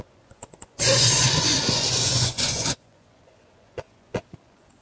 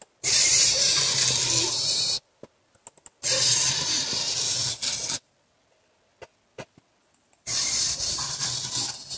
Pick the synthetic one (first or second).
first